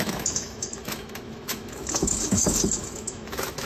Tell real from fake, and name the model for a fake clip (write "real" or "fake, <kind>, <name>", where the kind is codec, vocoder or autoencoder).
fake, autoencoder, DAC-VAE